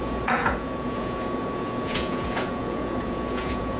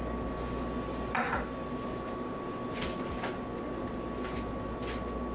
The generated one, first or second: first